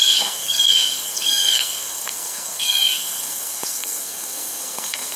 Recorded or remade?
remade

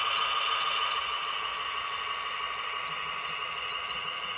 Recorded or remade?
recorded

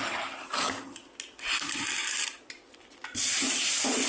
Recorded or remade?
recorded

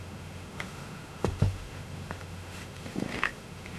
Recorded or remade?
remade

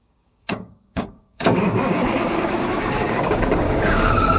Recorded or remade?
remade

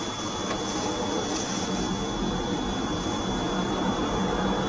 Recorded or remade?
recorded